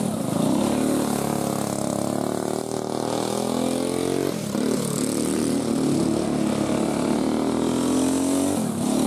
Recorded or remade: recorded